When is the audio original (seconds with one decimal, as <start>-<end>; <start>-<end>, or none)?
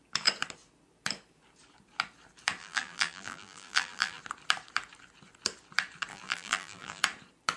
0.0-2.6; 4.2-6.1; 7.0-7.6